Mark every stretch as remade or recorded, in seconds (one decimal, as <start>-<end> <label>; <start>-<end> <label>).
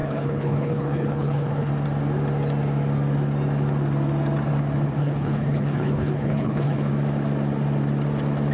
0.0-1.7 remade; 1.7-5.0 recorded; 5.0-6.9 remade; 6.9-8.5 recorded